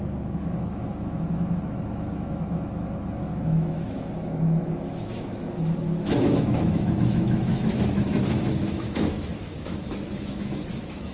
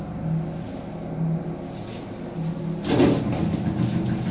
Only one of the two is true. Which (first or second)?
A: second